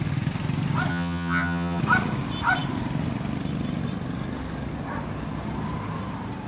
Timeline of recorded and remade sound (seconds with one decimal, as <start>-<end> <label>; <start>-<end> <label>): 0.0-0.9 recorded; 0.9-1.8 remade; 1.8-6.5 recorded